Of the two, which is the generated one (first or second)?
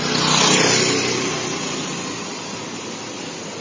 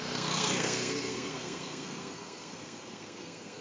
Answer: second